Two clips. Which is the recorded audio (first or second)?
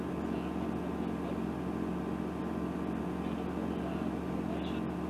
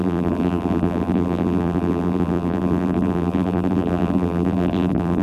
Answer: first